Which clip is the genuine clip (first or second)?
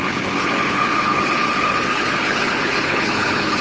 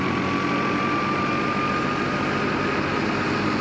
second